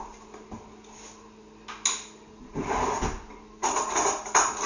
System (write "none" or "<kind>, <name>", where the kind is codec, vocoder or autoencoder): none